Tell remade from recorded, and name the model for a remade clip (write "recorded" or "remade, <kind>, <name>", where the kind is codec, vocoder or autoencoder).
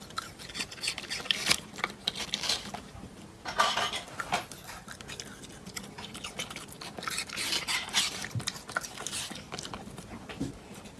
recorded